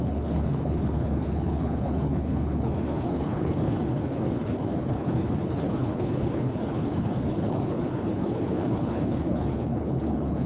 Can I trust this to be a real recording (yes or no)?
no